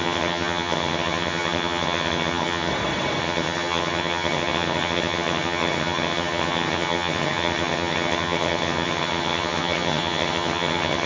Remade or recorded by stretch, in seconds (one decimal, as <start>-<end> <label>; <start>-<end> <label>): 0.0-2.7 remade; 2.7-3.2 recorded; 3.2-11.1 remade